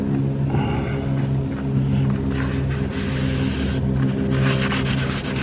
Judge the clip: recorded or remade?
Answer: recorded